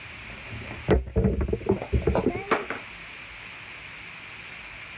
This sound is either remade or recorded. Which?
recorded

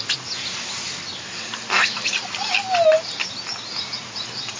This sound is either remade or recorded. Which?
recorded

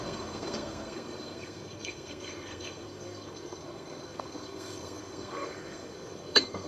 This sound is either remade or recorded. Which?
remade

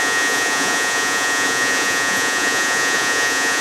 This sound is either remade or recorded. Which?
remade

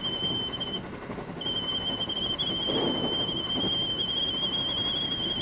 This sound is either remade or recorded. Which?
recorded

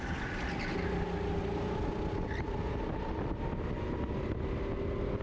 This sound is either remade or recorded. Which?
recorded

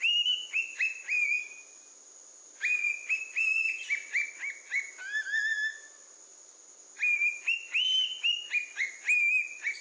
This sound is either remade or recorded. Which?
recorded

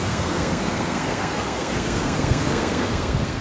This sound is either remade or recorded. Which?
remade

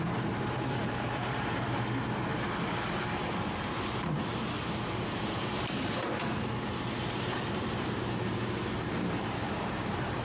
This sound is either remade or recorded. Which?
remade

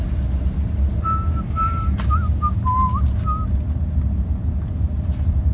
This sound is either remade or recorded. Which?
recorded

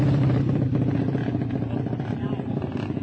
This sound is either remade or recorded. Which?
remade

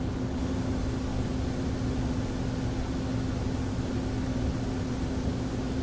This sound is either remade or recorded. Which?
recorded